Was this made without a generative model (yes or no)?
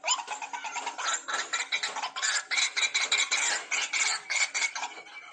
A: yes